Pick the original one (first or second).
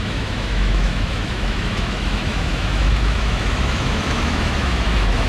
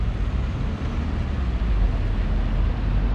second